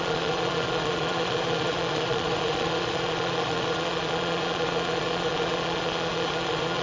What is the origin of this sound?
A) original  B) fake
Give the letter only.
B